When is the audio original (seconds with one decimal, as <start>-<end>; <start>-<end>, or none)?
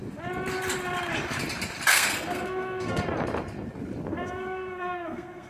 0.0-1.9; 3.0-4.1